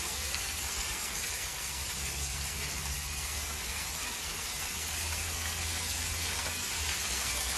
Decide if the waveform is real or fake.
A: fake